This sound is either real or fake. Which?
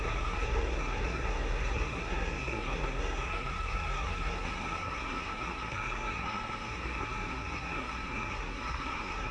fake